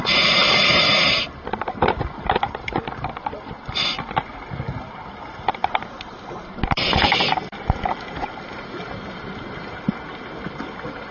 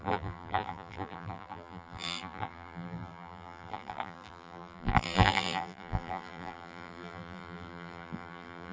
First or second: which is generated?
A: second